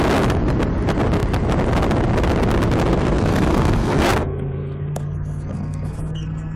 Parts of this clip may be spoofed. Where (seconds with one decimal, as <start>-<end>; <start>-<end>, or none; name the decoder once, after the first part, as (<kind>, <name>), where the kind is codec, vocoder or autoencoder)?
2.9-6.6 (codec, SNAC)